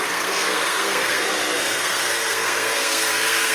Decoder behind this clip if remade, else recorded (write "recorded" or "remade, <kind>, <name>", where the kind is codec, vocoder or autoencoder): remade, codec, SNAC